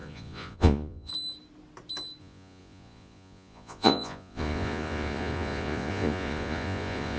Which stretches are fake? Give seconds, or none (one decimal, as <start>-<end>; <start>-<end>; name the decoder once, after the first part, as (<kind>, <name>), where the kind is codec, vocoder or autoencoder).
0.0-1.1 (vocoder, Vocos); 2.2-7.2

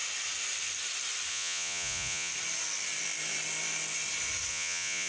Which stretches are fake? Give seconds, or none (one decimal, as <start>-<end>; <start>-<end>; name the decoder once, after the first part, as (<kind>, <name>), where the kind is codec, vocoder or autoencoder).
1.3-2.3 (vocoder, Vocos); 4.5-5.1

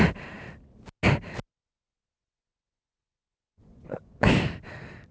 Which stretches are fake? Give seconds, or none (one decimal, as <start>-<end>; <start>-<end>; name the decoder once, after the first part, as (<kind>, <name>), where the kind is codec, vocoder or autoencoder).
1.6-4.3 (vocoder, Vocos)

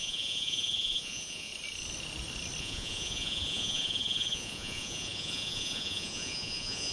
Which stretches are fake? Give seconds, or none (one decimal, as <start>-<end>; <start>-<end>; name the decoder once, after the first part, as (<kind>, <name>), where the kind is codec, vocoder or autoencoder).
0.0-1.5 (vocoder, Vocos); 2.6-6.9